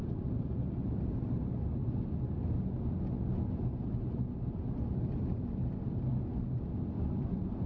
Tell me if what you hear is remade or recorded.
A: recorded